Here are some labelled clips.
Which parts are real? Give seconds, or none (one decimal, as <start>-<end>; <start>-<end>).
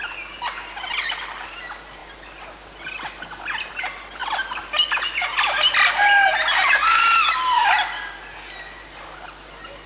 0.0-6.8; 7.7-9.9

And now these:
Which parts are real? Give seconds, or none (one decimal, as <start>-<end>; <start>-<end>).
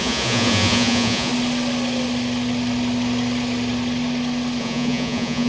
1.3-4.6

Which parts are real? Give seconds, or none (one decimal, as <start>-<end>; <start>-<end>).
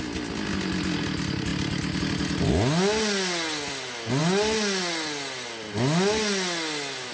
0.0-7.1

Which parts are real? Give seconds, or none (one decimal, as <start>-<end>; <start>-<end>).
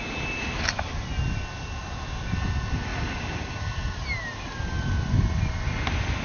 0.0-6.2